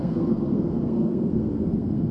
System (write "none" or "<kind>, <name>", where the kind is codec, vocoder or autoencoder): codec, SNAC